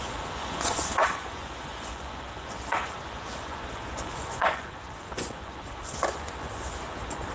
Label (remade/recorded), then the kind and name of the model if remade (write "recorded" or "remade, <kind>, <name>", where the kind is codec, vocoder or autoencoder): remade, vocoder, Vocos